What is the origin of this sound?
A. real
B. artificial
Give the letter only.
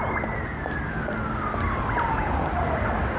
A